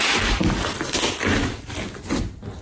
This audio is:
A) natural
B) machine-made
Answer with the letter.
A